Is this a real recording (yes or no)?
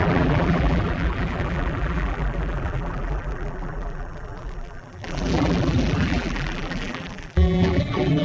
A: no